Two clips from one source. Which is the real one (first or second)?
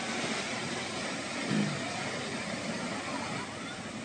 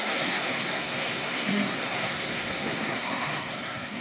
first